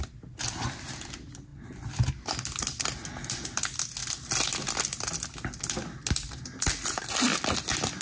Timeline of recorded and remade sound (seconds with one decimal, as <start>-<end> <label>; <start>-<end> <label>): 0.0-7.3 recorded; 7.3-8.0 remade